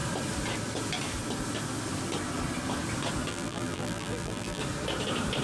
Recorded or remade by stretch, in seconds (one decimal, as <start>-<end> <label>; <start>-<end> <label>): 0.0-3.3 recorded; 3.3-4.6 remade; 4.6-5.4 recorded